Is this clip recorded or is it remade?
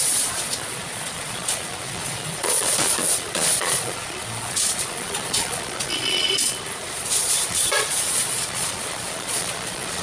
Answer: remade